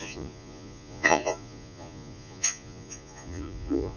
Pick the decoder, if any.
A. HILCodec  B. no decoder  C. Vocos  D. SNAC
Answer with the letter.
C